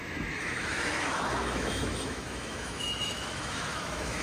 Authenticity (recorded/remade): remade